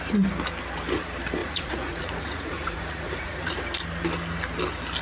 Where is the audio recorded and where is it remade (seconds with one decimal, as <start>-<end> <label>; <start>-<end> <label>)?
0.0-1.4 recorded; 1.4-3.6 remade; 3.6-5.0 recorded